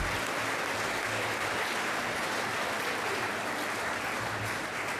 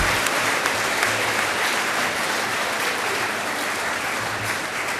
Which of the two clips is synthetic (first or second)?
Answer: second